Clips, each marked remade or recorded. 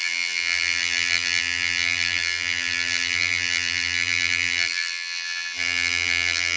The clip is remade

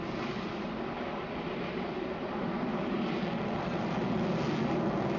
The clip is remade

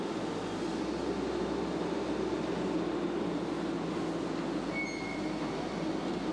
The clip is recorded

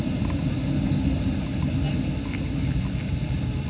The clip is recorded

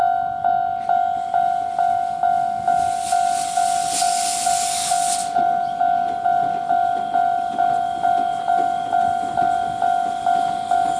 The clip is recorded